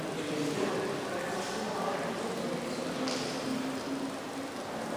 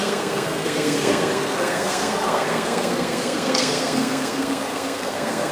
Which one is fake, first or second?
second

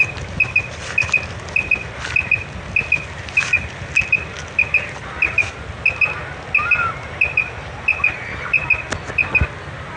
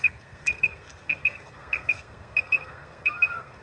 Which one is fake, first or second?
second